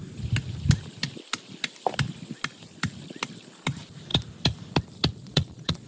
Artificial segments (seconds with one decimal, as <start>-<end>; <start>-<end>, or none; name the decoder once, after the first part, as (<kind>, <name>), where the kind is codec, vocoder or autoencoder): 5.2-5.9 (vocoder, Vocos)